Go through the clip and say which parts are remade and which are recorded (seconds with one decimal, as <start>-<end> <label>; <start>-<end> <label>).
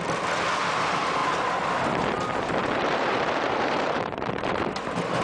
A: 0.0-2.6 recorded; 2.6-4.7 remade; 4.7-5.2 recorded